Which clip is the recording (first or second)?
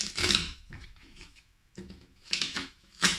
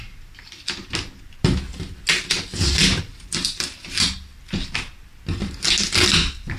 second